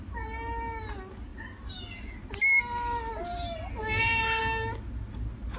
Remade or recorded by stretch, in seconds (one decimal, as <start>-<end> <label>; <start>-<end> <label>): 0.0-3.8 recorded; 3.8-4.4 remade; 4.4-5.6 recorded